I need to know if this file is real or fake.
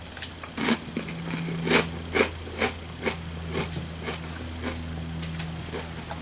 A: real